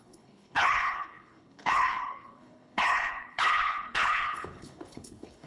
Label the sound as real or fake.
fake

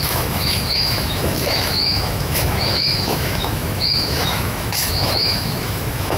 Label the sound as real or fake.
fake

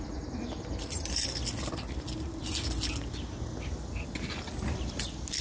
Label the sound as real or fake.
real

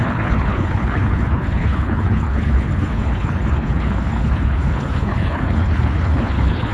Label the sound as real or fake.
fake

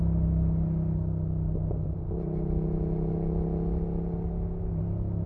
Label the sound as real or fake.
real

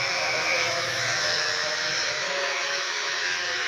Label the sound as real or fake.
fake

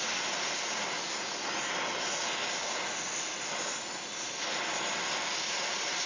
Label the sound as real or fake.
real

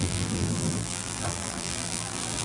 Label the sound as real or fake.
fake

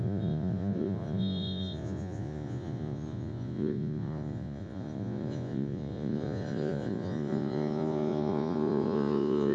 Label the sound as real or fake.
fake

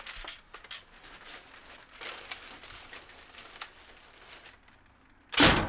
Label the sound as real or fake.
real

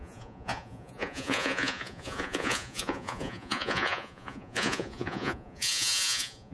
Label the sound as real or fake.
fake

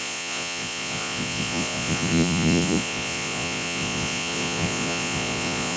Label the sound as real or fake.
fake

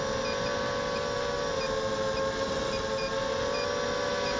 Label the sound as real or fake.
real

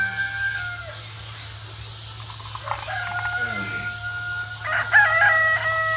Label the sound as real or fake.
real